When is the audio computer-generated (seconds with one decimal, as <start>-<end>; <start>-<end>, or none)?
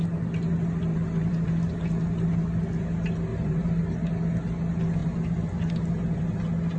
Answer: 0.9-1.5; 3.3-3.8